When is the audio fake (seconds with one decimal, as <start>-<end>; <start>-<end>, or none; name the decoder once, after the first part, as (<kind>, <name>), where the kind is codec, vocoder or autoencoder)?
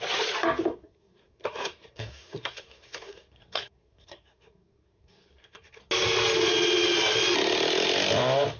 0.7-5.8 (codec, SNAC)